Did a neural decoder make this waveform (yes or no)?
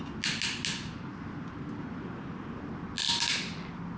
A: no